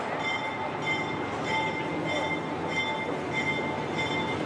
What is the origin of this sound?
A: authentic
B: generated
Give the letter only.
A